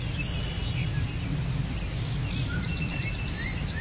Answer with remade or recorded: recorded